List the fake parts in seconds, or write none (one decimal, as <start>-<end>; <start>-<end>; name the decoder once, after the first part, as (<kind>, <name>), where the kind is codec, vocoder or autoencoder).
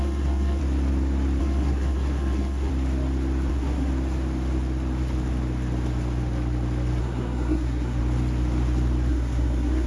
0.0-0.6 (codec, SNAC); 1.4-2.7; 3.5-3.9; 7.0-8.0; 9.1-9.9